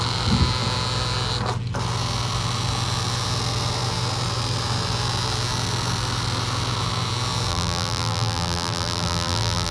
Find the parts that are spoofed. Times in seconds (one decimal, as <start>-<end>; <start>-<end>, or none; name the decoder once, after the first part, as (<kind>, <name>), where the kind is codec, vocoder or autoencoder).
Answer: 7.5-9.7 (vocoder, BigVGAN v2)